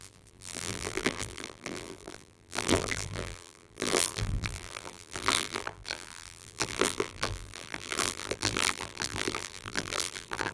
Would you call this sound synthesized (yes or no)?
yes